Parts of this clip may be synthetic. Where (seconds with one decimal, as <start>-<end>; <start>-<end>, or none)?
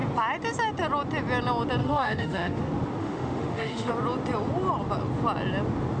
1.8-2.6; 3.0-3.9